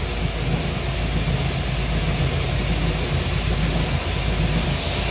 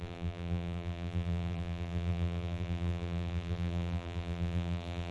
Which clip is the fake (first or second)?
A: second